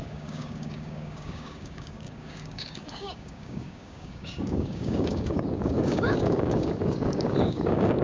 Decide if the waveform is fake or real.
fake